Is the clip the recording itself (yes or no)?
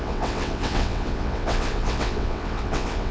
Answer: no